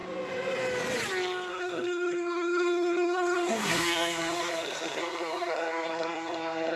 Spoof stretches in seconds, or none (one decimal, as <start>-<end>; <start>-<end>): 1.5-6.8